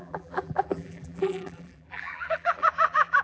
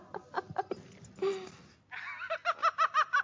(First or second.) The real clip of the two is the second